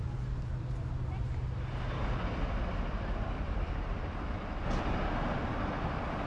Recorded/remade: recorded